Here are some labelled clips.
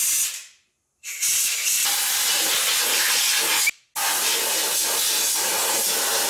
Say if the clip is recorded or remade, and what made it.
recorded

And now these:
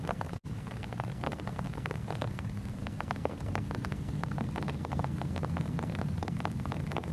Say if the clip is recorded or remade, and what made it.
remade, codec, SNAC